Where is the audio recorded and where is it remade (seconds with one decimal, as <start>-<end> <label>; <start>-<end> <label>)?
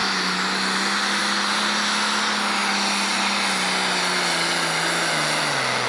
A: 0.0-5.9 recorded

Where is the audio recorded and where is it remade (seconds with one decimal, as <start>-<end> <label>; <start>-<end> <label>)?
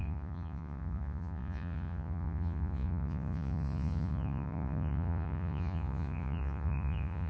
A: 0.0-7.3 remade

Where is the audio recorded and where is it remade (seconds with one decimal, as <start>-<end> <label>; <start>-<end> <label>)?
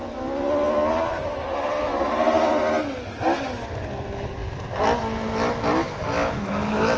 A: 0.0-7.0 recorded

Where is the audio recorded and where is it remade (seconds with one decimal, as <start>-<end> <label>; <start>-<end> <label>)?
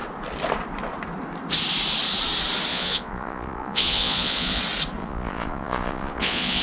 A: 0.0-2.7 recorded; 2.7-4.6 remade; 4.6-5.0 recorded; 5.0-6.6 remade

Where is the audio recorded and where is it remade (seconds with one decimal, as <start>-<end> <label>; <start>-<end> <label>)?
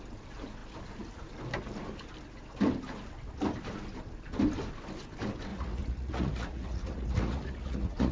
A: 0.0-5.5 recorded; 5.5-8.1 remade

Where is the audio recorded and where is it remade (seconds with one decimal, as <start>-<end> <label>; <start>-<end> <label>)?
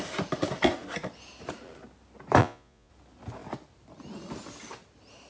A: 0.0-2.4 recorded; 2.4-2.9 remade; 2.9-5.3 recorded